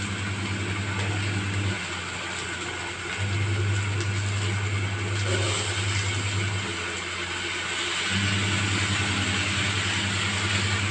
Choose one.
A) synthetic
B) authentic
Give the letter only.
B